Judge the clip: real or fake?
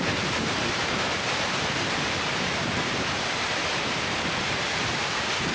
fake